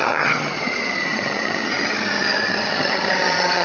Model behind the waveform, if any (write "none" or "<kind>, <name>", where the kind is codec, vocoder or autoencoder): vocoder, HiFi-GAN